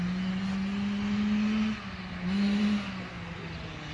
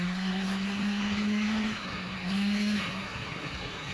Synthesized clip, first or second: second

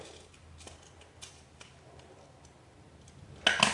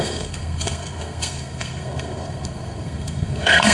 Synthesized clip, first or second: second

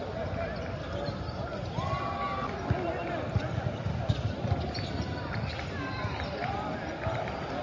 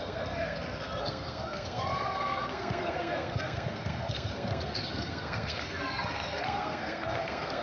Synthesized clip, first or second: second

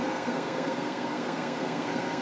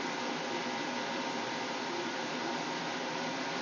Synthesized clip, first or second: first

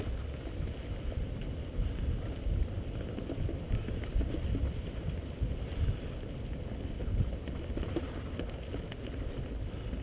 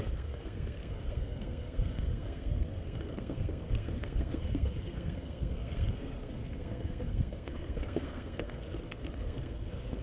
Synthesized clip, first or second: second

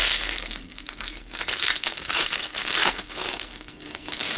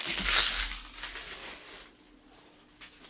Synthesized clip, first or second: first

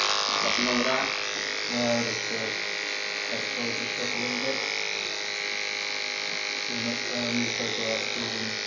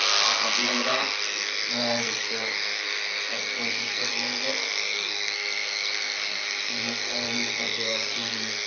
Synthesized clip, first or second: second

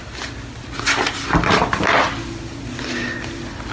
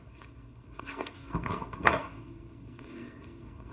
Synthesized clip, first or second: second